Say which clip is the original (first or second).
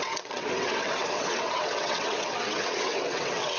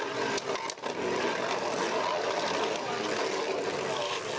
second